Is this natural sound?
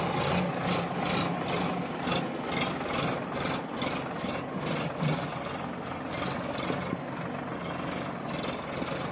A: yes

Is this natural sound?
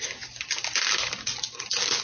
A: yes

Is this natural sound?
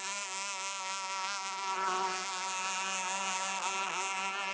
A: yes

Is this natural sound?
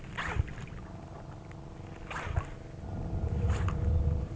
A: yes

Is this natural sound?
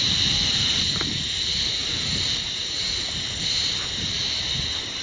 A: no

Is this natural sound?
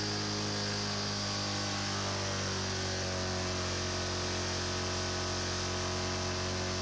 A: yes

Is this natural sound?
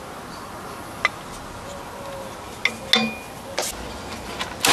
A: yes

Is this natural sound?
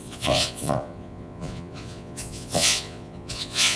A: no